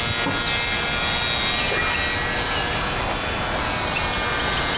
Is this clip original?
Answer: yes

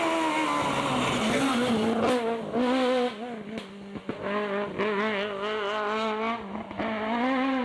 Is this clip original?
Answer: yes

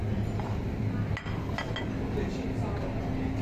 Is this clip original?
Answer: yes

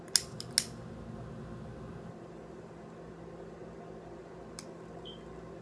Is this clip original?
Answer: yes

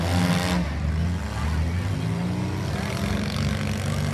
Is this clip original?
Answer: yes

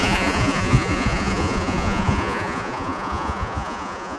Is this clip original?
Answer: no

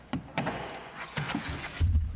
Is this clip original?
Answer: no